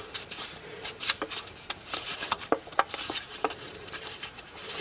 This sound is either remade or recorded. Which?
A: remade